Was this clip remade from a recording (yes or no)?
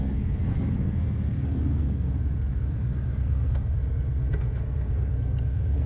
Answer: yes